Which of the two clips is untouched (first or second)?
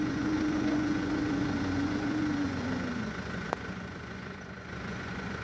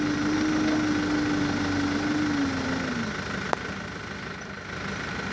second